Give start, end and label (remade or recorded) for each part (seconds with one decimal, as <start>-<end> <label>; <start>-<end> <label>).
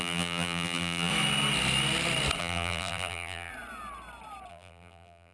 0.0-1.1 remade; 1.1-2.4 recorded; 2.4-3.5 remade; 3.5-4.5 recorded; 4.5-5.3 remade